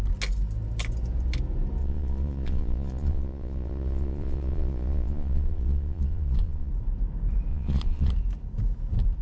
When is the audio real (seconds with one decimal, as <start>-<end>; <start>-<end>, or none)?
0.0-1.8; 6.7-7.5; 8.1-9.2